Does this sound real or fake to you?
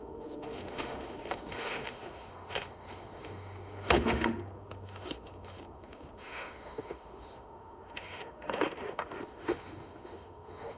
fake